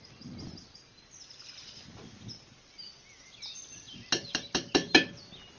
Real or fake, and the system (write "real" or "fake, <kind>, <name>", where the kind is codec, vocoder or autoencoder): real